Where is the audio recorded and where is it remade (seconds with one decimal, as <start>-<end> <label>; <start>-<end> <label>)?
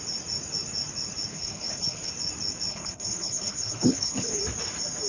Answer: 0.0-1.3 recorded; 1.3-2.1 remade; 2.1-2.7 recorded; 2.7-4.4 remade; 4.4-5.1 recorded